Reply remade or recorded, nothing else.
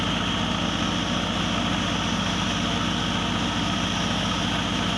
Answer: recorded